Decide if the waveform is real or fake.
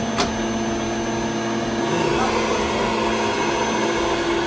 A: real